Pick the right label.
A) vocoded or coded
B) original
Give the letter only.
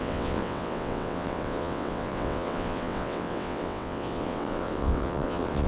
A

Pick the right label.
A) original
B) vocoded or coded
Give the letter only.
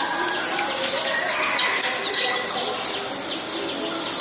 A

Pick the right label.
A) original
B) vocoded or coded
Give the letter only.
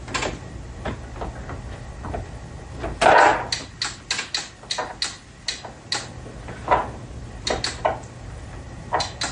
A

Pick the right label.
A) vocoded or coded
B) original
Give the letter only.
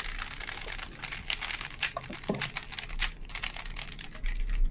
B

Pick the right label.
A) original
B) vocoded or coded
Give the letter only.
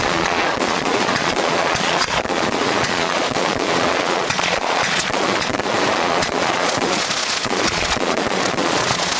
B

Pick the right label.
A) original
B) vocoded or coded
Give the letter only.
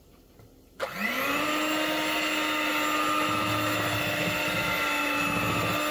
A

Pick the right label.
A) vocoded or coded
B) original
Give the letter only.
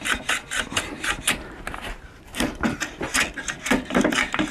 B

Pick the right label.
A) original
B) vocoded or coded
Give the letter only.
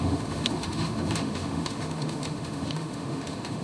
B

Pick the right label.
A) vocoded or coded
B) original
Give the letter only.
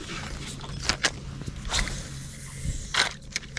B